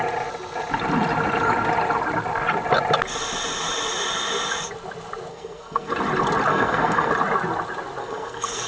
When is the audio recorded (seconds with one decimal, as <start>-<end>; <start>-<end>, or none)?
0.0-5.3; 5.9-6.5; 7.1-8.0